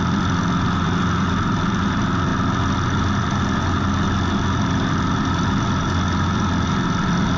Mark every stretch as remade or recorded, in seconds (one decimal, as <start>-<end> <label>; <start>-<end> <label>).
0.0-7.4 recorded